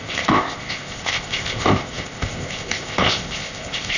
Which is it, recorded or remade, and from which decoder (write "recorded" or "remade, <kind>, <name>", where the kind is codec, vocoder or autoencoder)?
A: remade, codec, ZipCodec